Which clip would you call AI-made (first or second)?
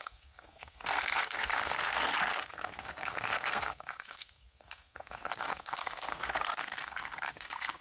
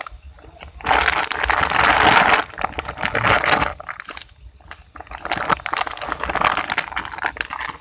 first